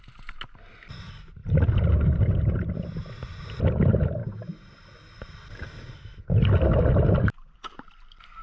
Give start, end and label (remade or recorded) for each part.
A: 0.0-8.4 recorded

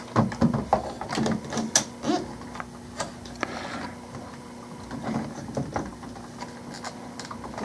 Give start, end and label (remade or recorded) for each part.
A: 0.0-7.6 recorded

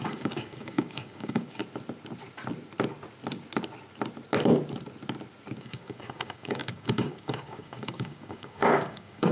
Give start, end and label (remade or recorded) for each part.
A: 0.0-1.6 remade; 1.6-5.6 recorded; 5.6-9.3 remade

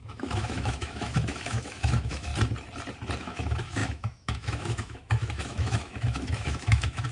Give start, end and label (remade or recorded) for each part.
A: 0.0-2.3 remade; 2.3-3.2 recorded; 3.2-7.1 remade

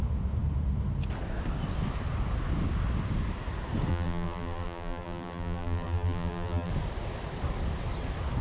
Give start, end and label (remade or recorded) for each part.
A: 0.0-3.9 recorded; 3.9-6.7 remade; 6.7-8.4 recorded

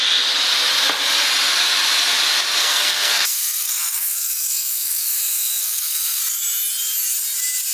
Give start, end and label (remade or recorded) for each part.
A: 0.0-2.6 recorded; 2.6-6.2 remade; 6.2-7.7 recorded

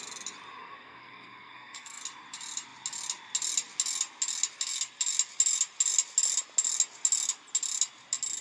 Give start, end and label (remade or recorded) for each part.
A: 0.0-0.6 recorded; 0.6-2.0 remade; 2.0-8.4 recorded

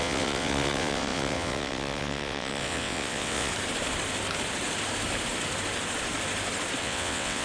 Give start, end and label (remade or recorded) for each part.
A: 0.0-3.5 remade; 3.5-6.8 recorded; 6.8-7.4 remade